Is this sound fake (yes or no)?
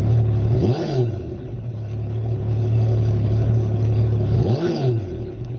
yes